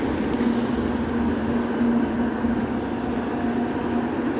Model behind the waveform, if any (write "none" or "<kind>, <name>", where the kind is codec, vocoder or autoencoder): none